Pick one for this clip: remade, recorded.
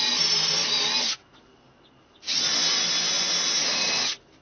recorded